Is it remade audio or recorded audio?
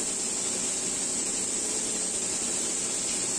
recorded